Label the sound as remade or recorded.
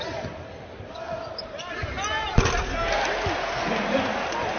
recorded